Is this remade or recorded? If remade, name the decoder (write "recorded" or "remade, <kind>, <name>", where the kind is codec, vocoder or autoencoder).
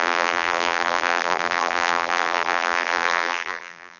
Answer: remade, vocoder, BigVGAN v2